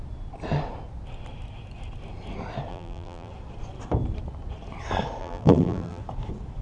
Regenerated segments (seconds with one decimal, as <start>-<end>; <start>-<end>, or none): 2.7-3.3; 5.2-6.0